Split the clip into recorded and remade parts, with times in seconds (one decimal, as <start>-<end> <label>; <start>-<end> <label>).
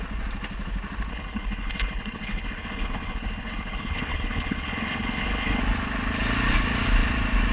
0.0-1.1 recorded; 1.1-5.6 remade; 5.6-7.5 recorded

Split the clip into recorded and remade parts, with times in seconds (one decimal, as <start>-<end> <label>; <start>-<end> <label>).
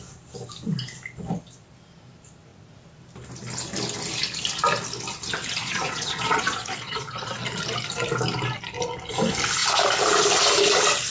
0.0-5.6 recorded; 5.6-7.4 remade; 7.4-11.1 recorded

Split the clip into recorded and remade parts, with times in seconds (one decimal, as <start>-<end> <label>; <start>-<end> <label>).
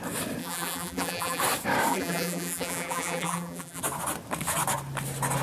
0.0-0.4 recorded; 0.4-1.4 remade; 1.4-1.9 recorded; 1.9-3.8 remade; 3.8-5.4 recorded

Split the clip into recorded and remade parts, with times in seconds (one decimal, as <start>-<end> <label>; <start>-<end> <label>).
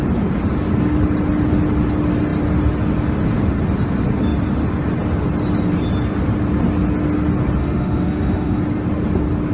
0.0-7.6 recorded; 7.6-8.6 remade; 8.6-9.5 recorded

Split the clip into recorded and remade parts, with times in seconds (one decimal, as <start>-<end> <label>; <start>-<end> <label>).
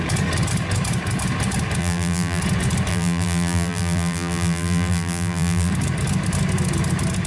0.0-1.8 recorded; 1.8-2.4 remade; 2.4-2.9 recorded; 2.9-5.7 remade; 5.7-7.3 recorded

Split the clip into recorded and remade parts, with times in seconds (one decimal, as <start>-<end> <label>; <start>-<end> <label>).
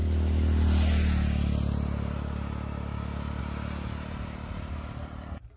0.0-5.6 recorded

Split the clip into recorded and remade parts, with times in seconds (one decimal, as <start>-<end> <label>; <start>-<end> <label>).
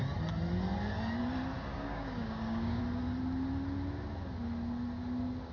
0.0-1.7 recorded; 1.7-2.8 remade; 2.8-5.5 recorded